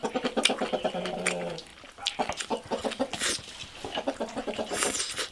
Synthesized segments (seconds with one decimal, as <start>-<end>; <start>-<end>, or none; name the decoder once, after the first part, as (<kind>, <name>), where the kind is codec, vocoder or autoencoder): none